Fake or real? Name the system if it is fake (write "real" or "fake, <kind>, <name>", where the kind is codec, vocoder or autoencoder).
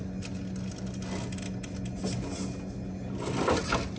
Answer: real